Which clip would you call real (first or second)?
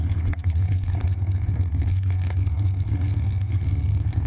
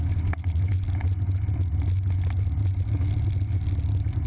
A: second